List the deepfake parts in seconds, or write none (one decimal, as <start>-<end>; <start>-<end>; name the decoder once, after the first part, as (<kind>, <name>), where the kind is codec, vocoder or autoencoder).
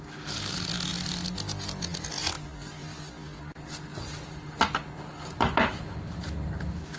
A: none